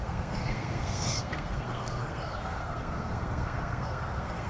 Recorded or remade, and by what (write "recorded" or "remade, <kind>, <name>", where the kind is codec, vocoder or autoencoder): remade, codec, SNAC